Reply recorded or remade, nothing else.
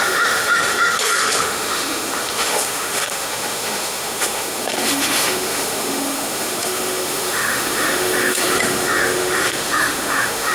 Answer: remade